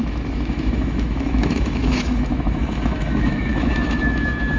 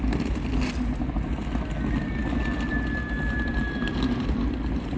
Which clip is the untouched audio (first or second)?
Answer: second